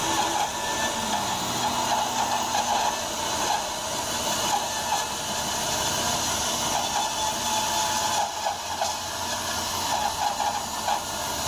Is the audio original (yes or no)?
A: yes